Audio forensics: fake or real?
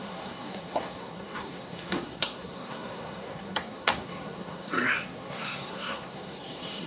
fake